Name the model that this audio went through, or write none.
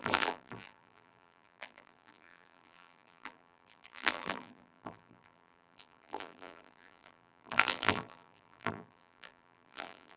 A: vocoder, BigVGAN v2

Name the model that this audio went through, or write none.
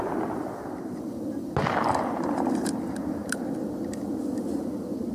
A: none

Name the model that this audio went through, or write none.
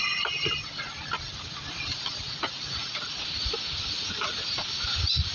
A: none